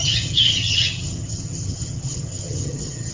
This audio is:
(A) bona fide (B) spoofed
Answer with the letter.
B